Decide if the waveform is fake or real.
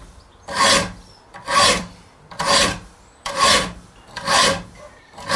fake